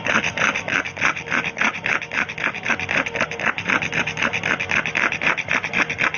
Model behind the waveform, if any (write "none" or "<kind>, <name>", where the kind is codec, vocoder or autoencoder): none